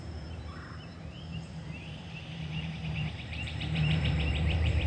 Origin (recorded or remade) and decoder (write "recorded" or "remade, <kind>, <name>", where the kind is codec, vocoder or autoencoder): remade, vocoder, BigVGAN v2